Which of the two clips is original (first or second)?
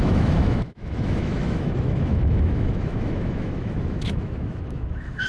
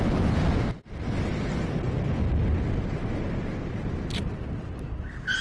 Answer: second